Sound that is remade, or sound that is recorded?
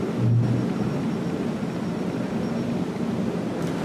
recorded